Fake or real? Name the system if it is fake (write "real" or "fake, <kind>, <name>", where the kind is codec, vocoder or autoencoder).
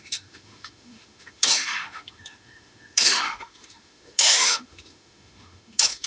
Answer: fake, autoencoder, DAC-VAE